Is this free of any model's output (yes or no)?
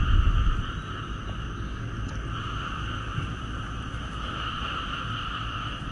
yes